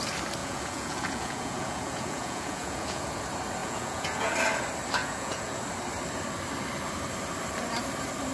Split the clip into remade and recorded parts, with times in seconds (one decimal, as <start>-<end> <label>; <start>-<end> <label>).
0.0-0.4 recorded; 0.4-3.2 remade; 3.2-3.6 recorded; 3.6-4.3 remade; 4.3-5.0 recorded; 5.0-5.6 remade; 5.6-8.3 recorded